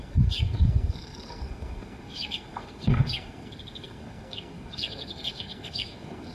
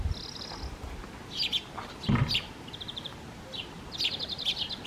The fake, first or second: first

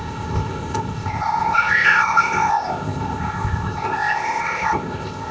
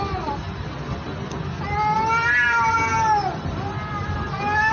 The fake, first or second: first